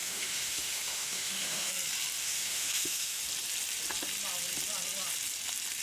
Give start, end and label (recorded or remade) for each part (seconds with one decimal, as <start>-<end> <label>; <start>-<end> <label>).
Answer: 0.0-1.7 remade; 1.7-2.2 recorded; 2.2-3.2 remade; 3.2-5.8 recorded